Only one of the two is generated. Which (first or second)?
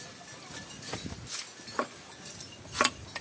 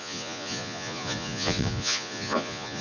second